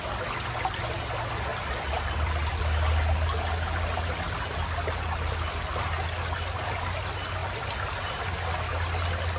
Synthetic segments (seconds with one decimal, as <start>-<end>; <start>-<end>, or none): 1.5-2.6